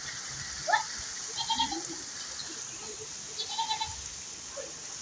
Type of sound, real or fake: real